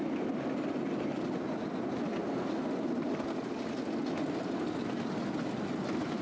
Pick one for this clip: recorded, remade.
recorded